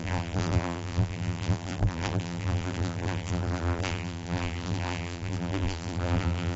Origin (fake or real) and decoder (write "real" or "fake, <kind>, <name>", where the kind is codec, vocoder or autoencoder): fake, vocoder, BigVGAN v2